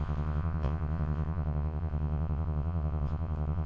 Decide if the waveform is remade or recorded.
remade